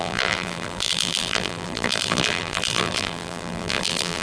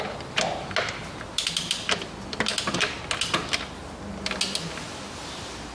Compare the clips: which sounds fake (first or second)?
first